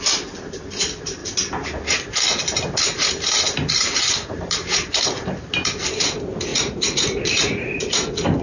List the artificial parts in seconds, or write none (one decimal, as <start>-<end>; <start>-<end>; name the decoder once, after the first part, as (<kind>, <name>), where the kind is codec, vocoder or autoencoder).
6.5-7.8 (vocoder, Vocos)